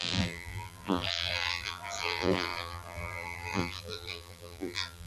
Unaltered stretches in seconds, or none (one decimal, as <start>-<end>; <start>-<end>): none